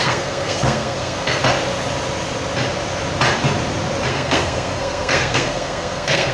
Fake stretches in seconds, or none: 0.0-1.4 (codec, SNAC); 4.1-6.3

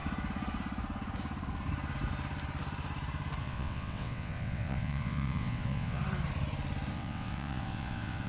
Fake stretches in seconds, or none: 3.4-6.0 (vocoder, WaveNeXt); 6.9-8.3

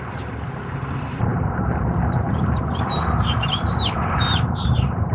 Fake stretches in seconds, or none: 0.0-5.1 (vocoder, BigVGAN v2)

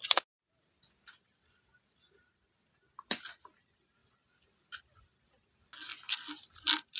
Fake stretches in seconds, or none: none

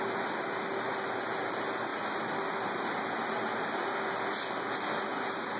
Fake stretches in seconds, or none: none

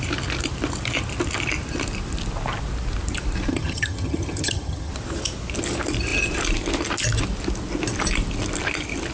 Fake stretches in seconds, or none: 3.5-4.9 (vocoder, HiFi-GAN)

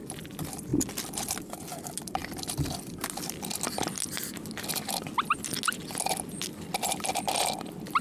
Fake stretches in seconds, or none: none